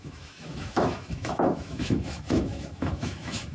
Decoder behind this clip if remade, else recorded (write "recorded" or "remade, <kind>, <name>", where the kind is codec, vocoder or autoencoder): remade, autoencoder, DAC-VAE